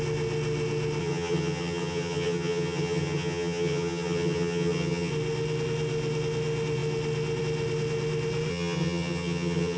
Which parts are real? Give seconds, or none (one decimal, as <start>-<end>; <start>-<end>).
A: 0.0-1.0; 5.1-8.5